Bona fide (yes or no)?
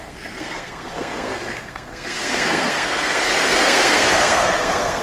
no